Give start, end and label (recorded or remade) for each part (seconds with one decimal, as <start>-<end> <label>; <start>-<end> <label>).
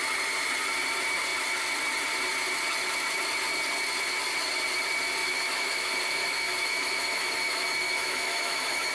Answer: 0.0-5.2 recorded; 5.2-8.9 remade